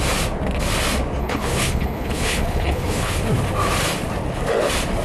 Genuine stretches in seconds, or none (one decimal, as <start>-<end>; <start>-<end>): 0.0-1.2; 3.2-5.0